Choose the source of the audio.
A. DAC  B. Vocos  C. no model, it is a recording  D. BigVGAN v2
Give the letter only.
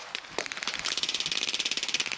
D